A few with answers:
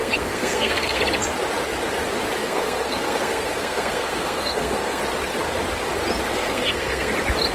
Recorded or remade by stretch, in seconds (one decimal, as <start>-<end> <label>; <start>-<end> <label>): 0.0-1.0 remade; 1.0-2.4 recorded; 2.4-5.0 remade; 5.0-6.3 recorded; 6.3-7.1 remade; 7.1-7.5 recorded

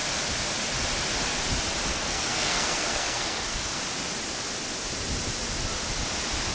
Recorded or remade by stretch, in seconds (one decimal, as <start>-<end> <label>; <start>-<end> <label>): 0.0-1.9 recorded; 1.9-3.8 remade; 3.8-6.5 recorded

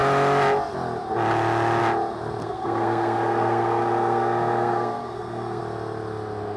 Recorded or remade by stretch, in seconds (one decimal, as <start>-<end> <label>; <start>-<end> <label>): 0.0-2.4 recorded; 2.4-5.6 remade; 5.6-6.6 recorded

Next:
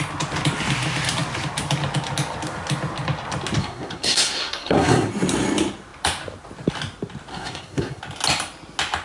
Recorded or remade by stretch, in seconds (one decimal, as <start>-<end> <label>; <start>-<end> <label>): 0.0-3.6 recorded; 3.6-5.1 remade; 5.1-7.3 recorded; 7.3-8.0 remade; 8.0-9.0 recorded

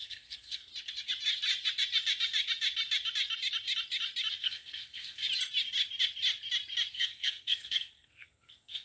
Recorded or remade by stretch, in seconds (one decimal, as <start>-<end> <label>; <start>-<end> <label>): 0.0-0.7 remade; 0.7-4.4 recorded; 4.4-5.2 remade; 5.2-6.9 recorded; 6.9-8.8 remade